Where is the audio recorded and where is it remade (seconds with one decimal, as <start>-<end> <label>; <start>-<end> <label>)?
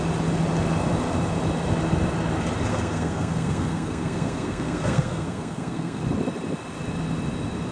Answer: 0.0-2.7 recorded; 2.7-6.0 remade; 6.0-7.7 recorded